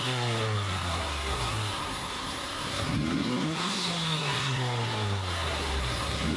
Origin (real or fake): fake